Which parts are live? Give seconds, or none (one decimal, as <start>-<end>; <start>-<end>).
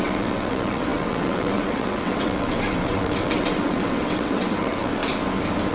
5.0-5.7